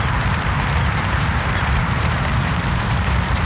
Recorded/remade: remade